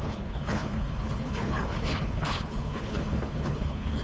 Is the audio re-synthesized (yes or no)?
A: yes